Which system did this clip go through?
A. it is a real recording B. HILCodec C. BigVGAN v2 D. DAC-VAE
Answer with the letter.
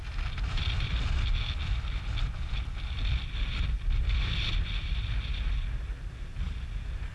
A